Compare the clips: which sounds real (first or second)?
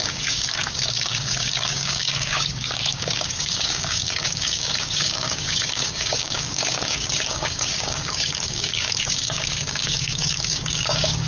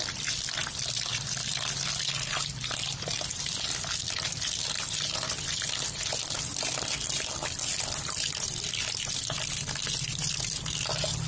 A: second